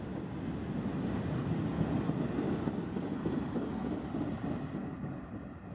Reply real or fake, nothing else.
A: real